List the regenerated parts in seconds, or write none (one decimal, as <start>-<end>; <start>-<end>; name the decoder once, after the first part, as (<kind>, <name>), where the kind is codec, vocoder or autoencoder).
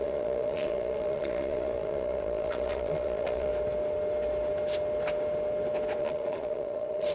0.0-3.5 (vocoder, Vocos); 6.0-7.1